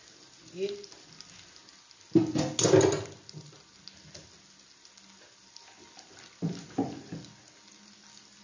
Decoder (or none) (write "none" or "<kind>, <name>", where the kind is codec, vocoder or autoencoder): none